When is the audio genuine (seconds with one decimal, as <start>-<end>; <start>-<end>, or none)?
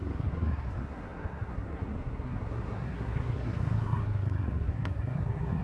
none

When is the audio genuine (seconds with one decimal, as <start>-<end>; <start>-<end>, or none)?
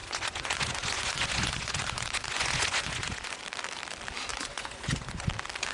3.4-4.3; 5.3-5.7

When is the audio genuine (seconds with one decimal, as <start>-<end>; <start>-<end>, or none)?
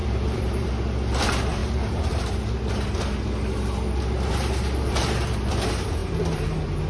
0.7-1.6; 2.7-6.9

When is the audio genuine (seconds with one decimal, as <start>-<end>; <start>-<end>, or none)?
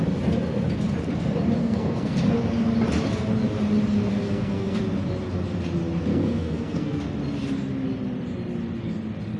0.0-1.6; 2.2-4.1; 4.8-6.1; 7.0-9.4